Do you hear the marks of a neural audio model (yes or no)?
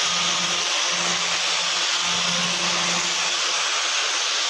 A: no